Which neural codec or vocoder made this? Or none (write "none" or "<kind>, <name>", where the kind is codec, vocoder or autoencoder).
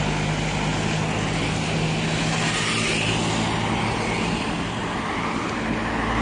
none